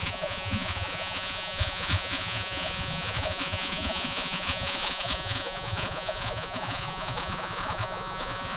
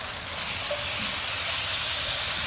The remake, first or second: first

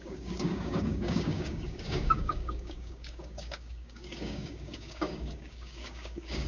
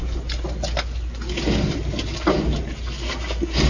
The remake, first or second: first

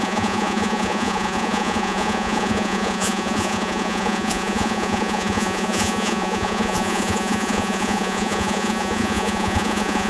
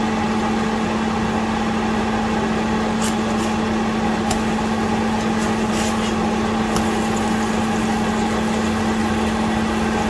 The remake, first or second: first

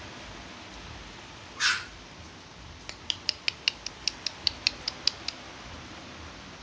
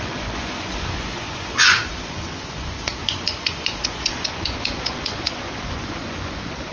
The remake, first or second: second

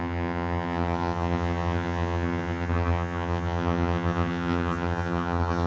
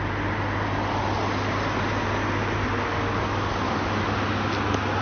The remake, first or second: first